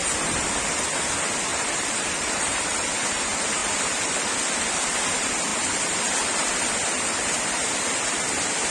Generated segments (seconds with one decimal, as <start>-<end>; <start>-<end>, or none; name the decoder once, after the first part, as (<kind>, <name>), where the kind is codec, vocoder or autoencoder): 0.0-0.5 (vocoder, BigVGAN v2); 1.5-2.4